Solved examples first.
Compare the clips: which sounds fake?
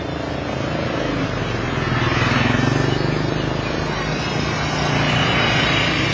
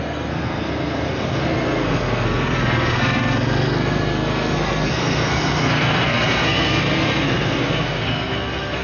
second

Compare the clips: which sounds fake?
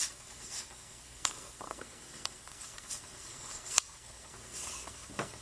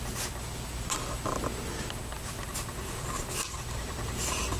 first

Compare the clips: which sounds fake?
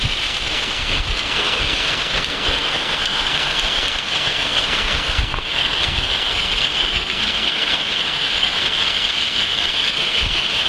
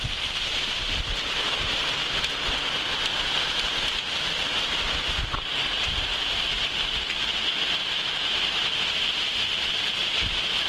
first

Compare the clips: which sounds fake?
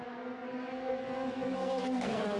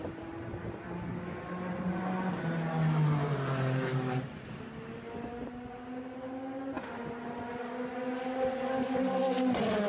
first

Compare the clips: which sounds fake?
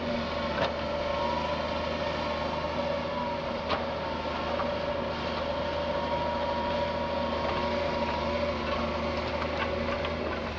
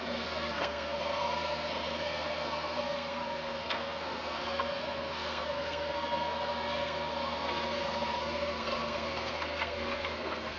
second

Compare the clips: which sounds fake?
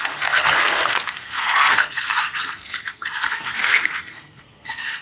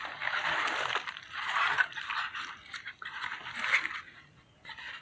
first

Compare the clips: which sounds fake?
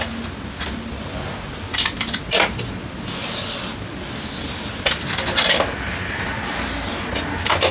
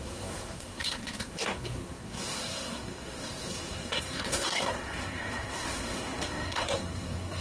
second